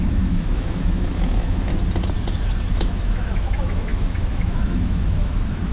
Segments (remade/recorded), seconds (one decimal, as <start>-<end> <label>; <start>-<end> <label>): 0.0-1.7 remade; 1.7-2.7 recorded; 2.7-5.7 remade